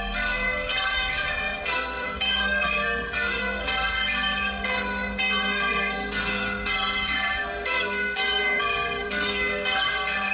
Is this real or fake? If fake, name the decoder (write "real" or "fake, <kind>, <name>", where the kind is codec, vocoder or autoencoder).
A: fake, codec, SNAC